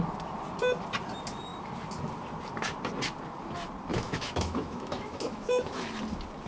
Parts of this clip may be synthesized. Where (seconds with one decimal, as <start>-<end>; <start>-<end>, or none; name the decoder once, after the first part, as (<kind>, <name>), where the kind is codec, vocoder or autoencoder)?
3.9-5.9 (autoencoder, DAC-VAE)